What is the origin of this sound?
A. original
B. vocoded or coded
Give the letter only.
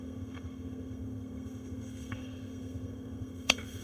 B